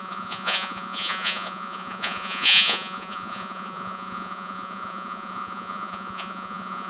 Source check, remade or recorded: remade